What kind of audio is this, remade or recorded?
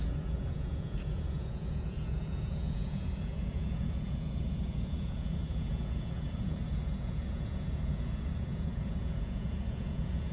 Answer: remade